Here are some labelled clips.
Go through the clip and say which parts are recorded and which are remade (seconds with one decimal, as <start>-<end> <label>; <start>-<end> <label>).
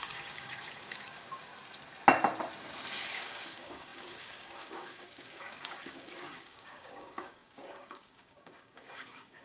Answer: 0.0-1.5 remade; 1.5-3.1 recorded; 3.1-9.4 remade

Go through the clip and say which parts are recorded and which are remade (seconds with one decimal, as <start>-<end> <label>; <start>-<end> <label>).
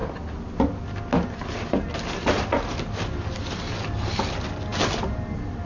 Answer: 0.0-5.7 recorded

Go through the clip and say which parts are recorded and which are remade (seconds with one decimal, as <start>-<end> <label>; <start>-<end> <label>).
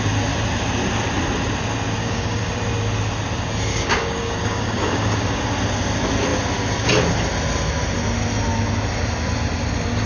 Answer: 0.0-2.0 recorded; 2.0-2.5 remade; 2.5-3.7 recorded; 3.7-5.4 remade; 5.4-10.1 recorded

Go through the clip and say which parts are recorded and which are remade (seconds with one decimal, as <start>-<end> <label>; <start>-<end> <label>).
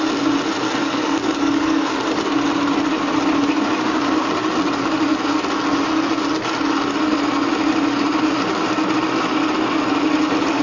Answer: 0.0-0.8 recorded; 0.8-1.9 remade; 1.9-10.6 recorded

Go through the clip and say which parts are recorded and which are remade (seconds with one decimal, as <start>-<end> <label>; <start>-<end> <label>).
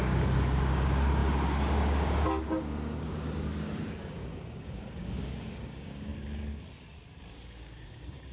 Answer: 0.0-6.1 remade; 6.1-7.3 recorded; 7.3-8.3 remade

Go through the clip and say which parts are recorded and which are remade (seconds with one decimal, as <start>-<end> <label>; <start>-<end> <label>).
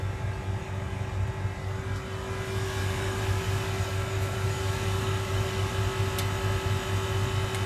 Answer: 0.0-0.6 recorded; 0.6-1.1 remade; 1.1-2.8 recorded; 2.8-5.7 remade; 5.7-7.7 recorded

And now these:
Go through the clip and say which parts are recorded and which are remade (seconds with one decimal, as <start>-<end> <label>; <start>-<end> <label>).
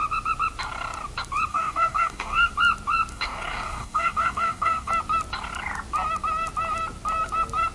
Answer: 0.0-1.5 recorded; 1.5-2.5 remade; 2.5-3.1 recorded; 3.1-4.9 remade; 4.9-7.7 recorded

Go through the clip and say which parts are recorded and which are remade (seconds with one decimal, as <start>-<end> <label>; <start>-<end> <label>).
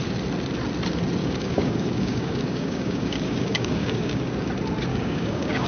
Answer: 0.0-1.2 recorded; 1.2-4.3 remade; 4.3-4.9 recorded; 4.9-5.7 remade